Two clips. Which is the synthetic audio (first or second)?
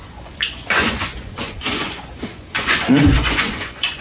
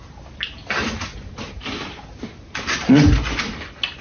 first